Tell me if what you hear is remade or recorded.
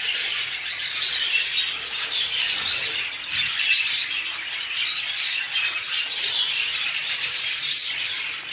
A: recorded